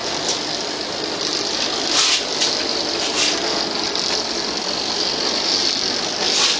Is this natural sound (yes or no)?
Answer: yes